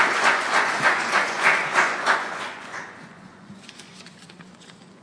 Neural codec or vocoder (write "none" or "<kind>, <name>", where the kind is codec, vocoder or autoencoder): vocoder, Vocos